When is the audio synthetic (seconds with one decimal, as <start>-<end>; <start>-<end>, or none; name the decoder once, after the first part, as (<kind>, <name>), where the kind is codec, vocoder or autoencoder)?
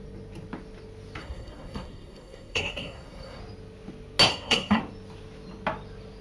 1.2-3.4 (codec, SNAC); 4.3-4.8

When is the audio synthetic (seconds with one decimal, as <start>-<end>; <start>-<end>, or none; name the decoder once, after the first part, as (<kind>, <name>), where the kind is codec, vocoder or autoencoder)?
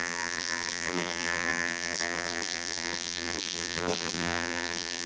0.0-5.1 (vocoder, BigVGAN v2)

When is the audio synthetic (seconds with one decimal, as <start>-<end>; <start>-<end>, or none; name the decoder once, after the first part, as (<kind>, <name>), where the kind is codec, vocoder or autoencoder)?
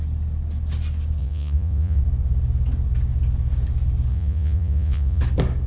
1.2-2.0 (vocoder, Vocos); 4.1-5.2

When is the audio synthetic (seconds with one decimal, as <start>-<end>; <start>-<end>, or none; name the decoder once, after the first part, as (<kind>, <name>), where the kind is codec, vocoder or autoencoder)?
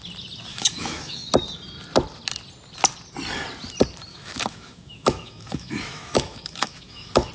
0.5-1.3 (autoencoder, DAC-VAE); 4.1-7.3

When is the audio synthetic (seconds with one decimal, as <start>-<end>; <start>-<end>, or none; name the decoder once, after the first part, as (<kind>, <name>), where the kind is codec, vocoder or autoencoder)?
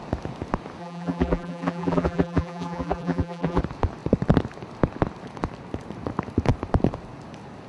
0.8-3.6 (vocoder, BigVGAN v2)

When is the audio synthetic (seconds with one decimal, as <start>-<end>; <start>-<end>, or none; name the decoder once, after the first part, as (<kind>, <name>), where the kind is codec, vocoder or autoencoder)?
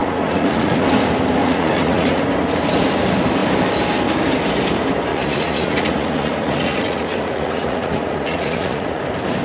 0.0-0.9 (vocoder, Vocos); 1.4-2.2; 5.1-9.0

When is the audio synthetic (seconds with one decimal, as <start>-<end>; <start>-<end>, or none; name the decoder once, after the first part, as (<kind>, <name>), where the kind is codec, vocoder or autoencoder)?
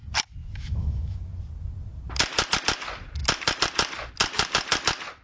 0.4-1.2 (autoencoder, DAC-VAE)